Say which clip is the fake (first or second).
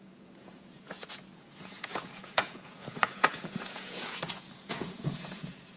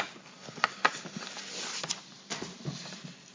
first